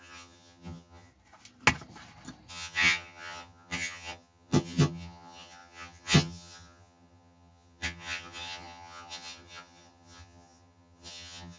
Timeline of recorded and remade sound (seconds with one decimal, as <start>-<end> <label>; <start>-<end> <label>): 0.0-1.1 remade; 1.1-2.5 recorded; 2.5-11.6 remade